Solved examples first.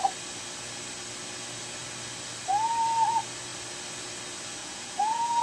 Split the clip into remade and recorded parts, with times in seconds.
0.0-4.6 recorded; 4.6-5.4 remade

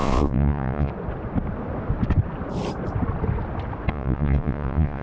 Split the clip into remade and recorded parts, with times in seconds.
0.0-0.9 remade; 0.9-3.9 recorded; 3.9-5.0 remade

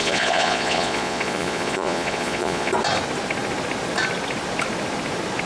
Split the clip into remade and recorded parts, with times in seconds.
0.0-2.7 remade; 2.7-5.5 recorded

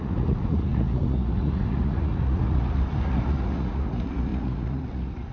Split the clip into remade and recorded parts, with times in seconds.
0.0-5.3 remade

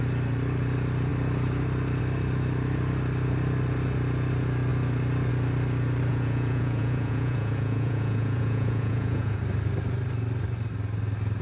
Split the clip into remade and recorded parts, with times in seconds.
0.0-6.1 recorded; 6.1-9.4 remade; 9.4-11.4 recorded

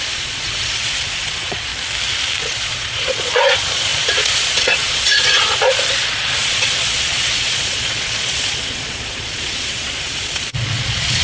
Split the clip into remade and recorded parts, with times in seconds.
0.0-1.7 remade; 1.7-2.4 recorded; 2.4-11.2 remade

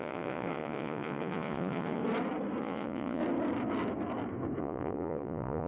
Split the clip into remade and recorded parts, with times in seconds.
0.0-2.0 remade; 2.0-2.6 recorded; 2.6-3.2 remade; 3.2-4.6 recorded; 4.6-5.7 remade

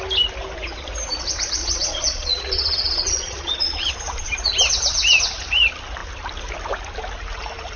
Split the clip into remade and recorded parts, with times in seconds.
0.0-1.6 recorded; 1.6-3.9 remade; 3.9-7.8 recorded